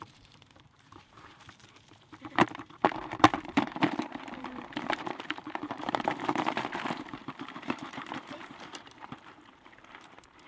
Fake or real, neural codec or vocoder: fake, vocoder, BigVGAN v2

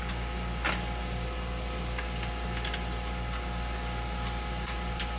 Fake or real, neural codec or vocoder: real